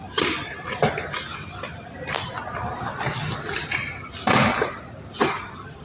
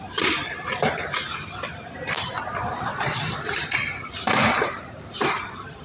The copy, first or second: second